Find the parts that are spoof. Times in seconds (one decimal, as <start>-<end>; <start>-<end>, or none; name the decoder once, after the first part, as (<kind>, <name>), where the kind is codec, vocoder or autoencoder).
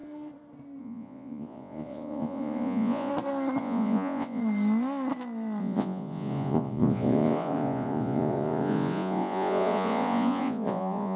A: 0.8-3.1 (vocoder, Vocos); 3.6-4.4; 5.6-11.2